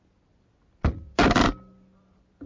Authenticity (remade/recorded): recorded